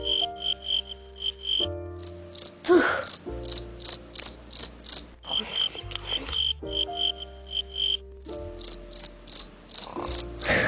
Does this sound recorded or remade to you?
recorded